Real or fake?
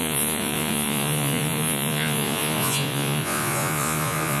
fake